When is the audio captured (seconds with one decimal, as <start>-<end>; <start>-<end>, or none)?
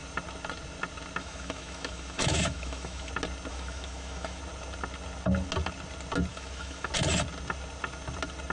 0.0-1.2; 3.1-3.5; 4.4-6.3; 6.9-8.5